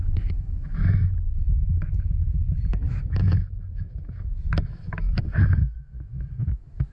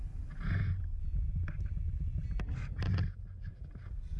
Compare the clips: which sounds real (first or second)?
second